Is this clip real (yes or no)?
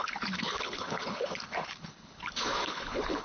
no